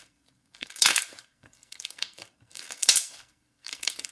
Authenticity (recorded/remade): remade